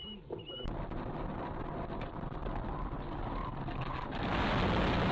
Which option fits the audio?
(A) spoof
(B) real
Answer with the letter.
B